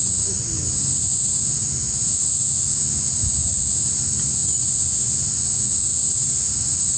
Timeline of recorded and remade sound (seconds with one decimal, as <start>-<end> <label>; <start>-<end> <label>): 0.0-7.0 recorded

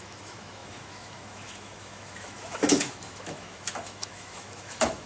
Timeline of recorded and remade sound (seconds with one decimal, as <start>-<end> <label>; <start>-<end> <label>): 0.0-5.1 remade

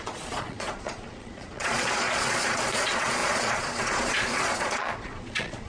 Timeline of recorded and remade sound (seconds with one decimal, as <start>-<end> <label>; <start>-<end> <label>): 0.0-5.7 remade

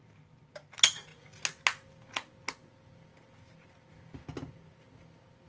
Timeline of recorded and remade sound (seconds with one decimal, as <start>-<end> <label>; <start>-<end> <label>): 0.0-5.5 recorded

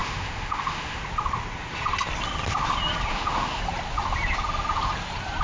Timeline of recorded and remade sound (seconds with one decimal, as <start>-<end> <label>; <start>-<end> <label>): 0.0-1.0 remade; 1.0-3.1 recorded; 3.1-3.6 remade; 3.6-5.4 recorded

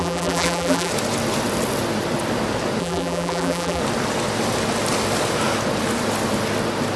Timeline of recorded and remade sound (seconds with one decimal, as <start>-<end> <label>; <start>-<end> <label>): 0.0-0.9 remade; 0.9-2.8 recorded; 2.8-3.8 remade; 3.8-7.0 recorded